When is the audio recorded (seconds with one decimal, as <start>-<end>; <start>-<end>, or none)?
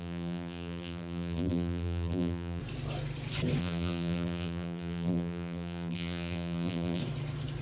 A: 2.6-3.6; 7.0-7.6